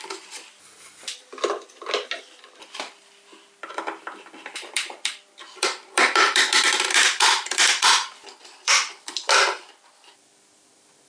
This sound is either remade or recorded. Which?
remade